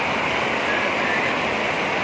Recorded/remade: recorded